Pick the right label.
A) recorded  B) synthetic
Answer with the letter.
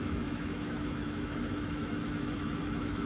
B